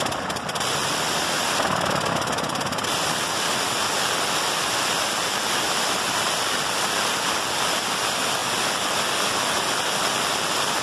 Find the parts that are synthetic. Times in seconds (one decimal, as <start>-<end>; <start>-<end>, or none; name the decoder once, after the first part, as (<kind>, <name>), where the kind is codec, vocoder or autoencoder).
none